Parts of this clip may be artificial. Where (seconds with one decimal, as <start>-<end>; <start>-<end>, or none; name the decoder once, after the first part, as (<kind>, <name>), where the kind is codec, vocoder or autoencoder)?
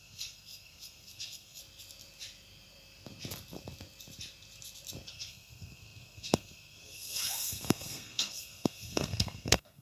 0.0-1.6 (codec, SNAC); 5.1-9.8